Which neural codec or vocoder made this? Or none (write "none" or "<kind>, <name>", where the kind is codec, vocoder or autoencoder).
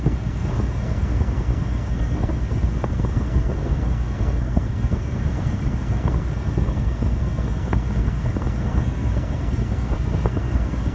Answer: codec, SNAC